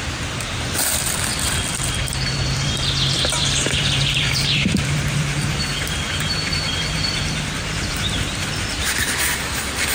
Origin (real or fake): fake